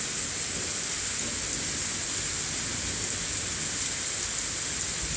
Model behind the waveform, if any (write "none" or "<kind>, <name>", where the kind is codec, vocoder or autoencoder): none